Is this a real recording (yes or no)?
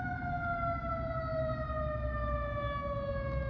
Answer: yes